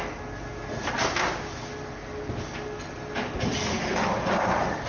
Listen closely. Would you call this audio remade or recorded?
recorded